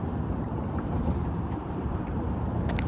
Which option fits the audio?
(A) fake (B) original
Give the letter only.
A